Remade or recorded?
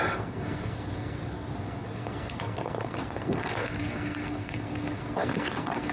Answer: remade